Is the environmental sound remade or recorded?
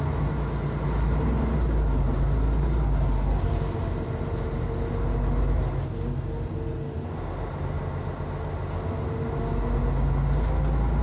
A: recorded